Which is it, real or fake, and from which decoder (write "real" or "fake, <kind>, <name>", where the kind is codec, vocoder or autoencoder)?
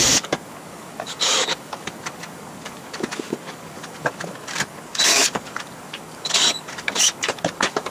fake, codec, DAC